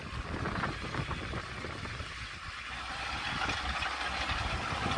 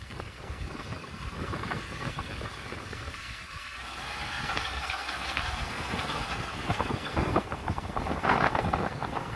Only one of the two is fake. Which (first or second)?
second